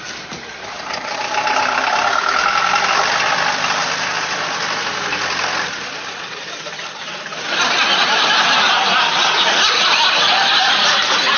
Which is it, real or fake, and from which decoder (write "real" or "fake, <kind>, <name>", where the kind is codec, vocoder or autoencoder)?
fake, vocoder, BigVGAN v2